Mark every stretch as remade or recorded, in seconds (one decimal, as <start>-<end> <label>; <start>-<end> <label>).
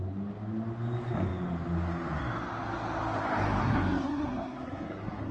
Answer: 0.0-3.6 recorded; 3.6-5.3 remade